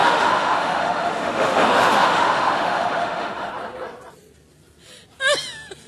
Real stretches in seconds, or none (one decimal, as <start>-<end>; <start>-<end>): 3.5-5.9